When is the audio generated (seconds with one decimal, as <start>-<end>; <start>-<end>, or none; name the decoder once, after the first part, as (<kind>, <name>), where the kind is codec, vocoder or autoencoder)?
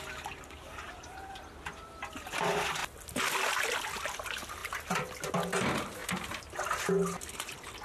none